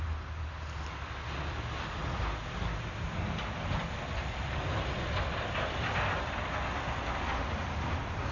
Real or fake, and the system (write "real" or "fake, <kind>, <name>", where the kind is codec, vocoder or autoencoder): real